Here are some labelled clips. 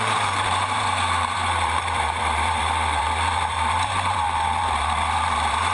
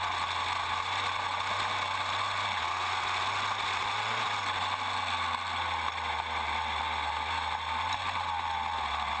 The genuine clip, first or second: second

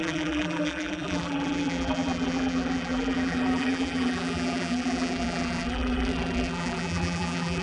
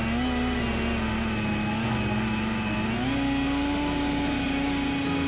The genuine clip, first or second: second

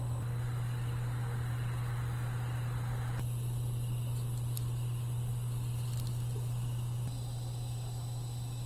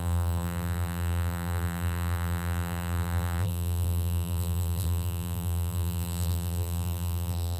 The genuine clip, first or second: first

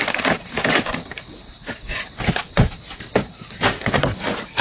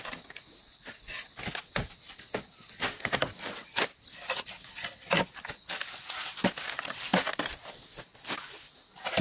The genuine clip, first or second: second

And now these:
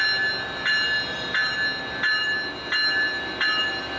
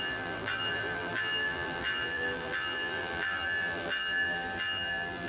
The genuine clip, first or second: first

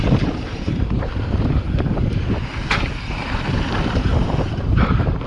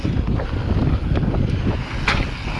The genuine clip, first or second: second